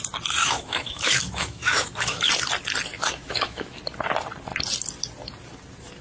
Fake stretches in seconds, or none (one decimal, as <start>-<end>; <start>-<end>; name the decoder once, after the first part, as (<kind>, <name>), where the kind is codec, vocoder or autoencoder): 0.4-2.3 (autoencoder, DAC-VAE); 2.9-3.8